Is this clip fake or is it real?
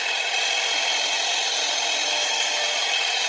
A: real